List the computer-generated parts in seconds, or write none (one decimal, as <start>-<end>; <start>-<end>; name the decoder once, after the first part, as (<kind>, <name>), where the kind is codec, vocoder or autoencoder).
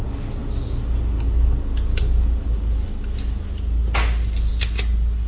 none